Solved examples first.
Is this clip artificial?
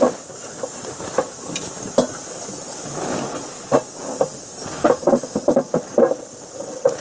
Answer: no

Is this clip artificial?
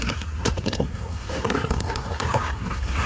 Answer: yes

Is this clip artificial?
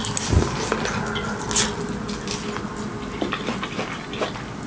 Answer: no